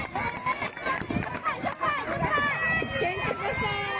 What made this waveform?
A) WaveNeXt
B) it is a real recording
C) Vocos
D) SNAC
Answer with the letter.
B